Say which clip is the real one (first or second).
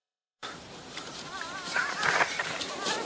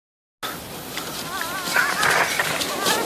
second